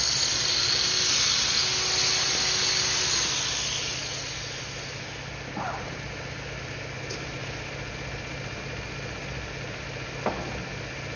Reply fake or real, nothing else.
real